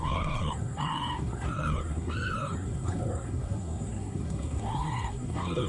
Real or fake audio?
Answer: fake